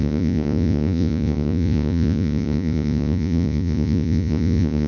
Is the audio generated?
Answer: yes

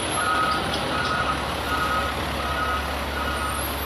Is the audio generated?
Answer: no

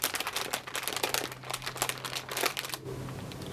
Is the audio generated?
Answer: no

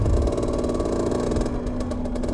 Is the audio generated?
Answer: no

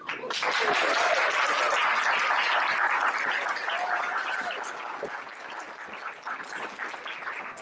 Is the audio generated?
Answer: no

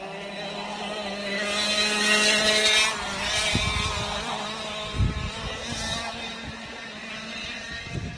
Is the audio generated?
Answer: no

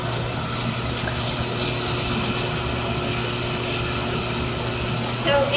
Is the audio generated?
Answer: no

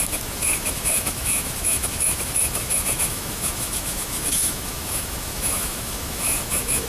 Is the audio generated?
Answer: yes